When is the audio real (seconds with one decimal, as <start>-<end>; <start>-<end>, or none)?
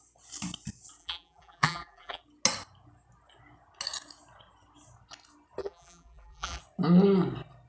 0.0-1.0; 2.2-5.6; 6.6-7.7